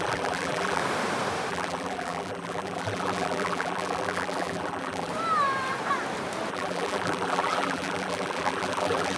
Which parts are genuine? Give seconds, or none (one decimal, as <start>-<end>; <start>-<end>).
0.8-1.5; 5.1-6.5